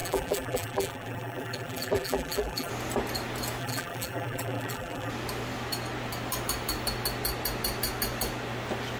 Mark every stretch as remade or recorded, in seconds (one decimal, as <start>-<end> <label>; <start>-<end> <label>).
0.0-2.7 remade; 2.7-3.6 recorded; 3.6-5.1 remade; 5.1-9.0 recorded